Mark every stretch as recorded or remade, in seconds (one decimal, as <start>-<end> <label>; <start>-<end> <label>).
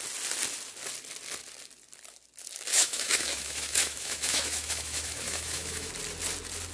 0.0-2.7 recorded; 2.7-5.9 remade; 5.9-6.7 recorded